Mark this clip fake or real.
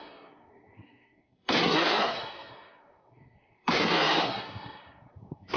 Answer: fake